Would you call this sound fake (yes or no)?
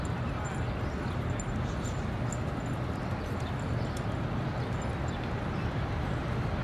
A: no